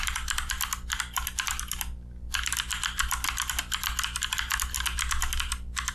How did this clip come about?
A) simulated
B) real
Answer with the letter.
B